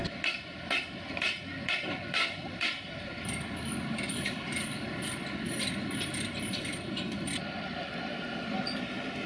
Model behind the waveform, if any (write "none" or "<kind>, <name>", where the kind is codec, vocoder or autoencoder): vocoder, BigVGAN v2